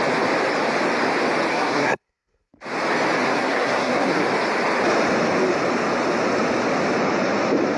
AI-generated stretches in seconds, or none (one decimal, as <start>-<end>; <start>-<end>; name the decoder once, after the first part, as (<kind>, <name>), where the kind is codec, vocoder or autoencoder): 1.5-2.5 (codec, SNAC); 3.3-4.2